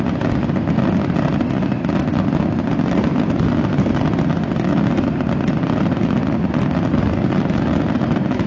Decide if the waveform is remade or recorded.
recorded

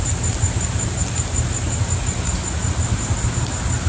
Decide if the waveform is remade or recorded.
recorded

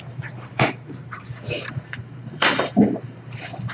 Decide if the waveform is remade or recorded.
remade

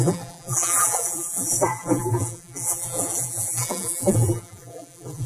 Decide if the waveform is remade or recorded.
remade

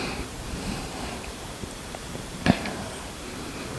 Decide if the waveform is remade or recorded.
remade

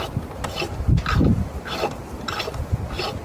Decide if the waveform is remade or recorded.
recorded